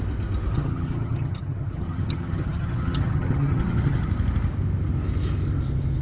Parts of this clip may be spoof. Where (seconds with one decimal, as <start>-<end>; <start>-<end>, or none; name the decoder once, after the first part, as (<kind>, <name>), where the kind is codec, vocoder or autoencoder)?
0.5-4.1 (vocoder, HiFi-GAN)